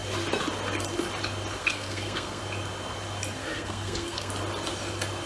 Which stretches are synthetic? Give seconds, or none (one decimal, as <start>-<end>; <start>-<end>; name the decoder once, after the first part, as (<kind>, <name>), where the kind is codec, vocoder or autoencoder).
1.6-2.4 (codec, SNAC); 3.4-4.3